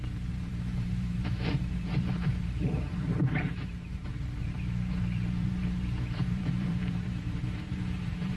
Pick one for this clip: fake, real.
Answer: fake